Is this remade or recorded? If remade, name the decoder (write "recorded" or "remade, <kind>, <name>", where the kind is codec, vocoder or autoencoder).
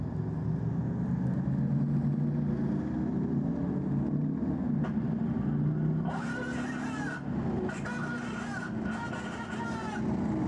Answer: recorded